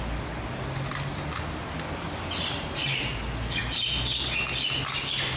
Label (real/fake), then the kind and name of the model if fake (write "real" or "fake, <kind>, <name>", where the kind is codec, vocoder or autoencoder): real